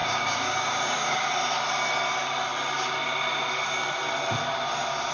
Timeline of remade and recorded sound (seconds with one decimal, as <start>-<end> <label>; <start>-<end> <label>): 0.0-1.3 remade; 1.3-5.1 recorded